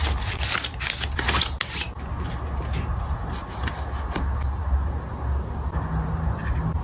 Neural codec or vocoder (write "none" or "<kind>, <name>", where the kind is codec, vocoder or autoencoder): none